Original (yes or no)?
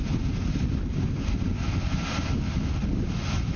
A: yes